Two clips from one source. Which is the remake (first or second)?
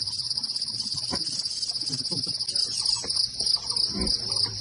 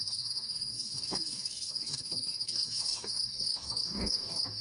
second